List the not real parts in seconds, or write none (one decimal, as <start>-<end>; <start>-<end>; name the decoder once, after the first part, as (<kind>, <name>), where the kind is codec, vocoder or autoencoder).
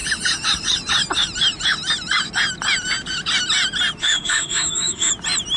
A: 4.0-5.1 (autoencoder, DAC-VAE)